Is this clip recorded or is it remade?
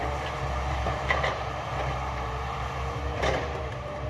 remade